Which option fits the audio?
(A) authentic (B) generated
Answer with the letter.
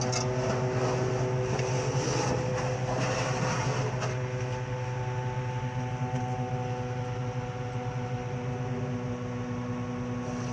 A